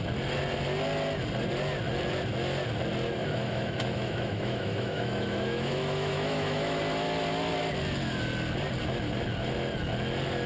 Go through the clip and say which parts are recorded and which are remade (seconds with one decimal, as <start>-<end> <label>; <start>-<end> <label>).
0.0-3.2 recorded; 3.2-6.8 remade; 6.8-10.5 recorded